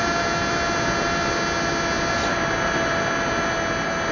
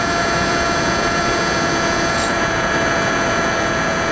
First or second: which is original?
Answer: first